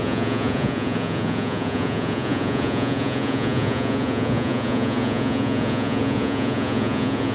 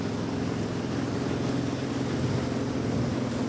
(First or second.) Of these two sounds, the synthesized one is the first